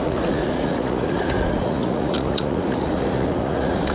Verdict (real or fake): fake